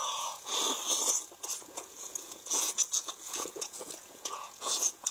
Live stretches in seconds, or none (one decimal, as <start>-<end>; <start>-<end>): 0.5-1.6